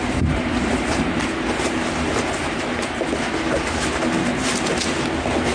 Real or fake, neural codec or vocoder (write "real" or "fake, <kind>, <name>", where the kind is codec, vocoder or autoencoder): real